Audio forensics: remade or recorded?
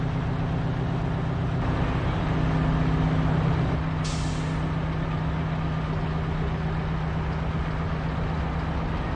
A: recorded